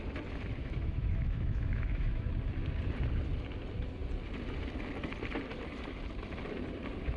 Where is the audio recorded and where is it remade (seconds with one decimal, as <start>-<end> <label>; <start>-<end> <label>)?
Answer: 0.0-0.6 recorded; 0.6-2.3 remade; 2.3-7.2 recorded